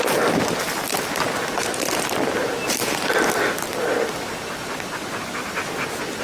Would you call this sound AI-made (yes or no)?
no